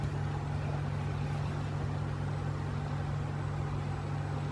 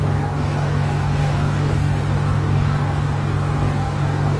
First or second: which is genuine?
first